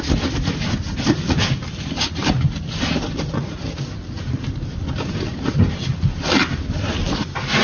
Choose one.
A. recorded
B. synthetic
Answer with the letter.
A